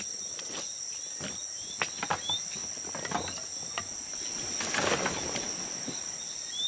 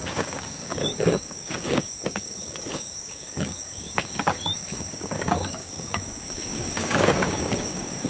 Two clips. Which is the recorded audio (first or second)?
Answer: first